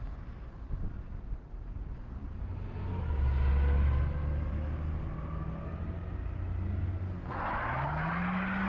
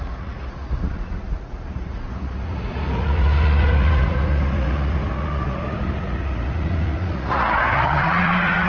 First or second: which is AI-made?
second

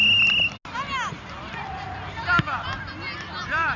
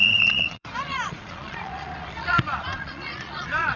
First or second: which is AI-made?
second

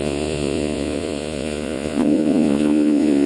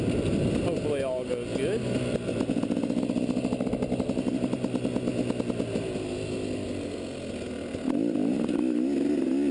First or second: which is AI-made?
first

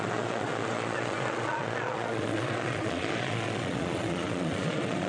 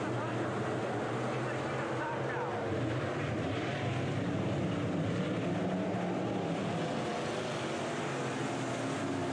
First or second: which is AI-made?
first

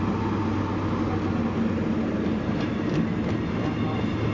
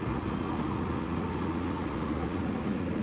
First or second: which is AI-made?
second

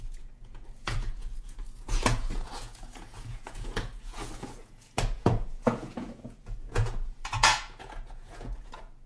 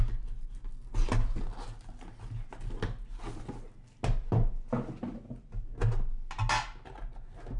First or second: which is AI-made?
first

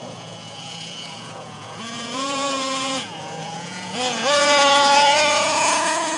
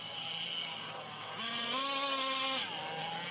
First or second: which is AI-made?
first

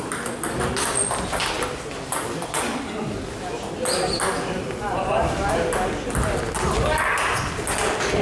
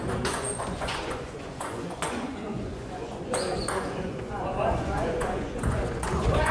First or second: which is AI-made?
second